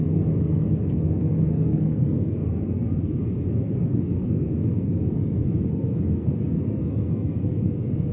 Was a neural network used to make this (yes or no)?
yes